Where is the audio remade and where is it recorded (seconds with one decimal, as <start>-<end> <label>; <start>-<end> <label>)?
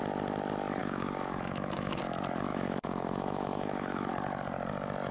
0.0-0.8 recorded; 0.8-2.0 remade; 2.0-2.5 recorded; 2.5-4.1 remade; 4.1-5.1 recorded